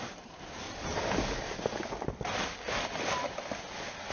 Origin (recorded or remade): recorded